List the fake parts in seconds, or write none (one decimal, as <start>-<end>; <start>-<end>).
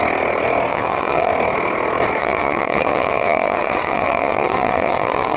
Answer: 0.7-1.3; 2.2-5.4